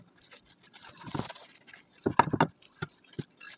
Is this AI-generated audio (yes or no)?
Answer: no